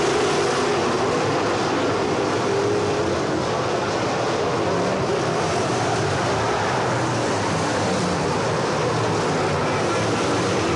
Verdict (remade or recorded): recorded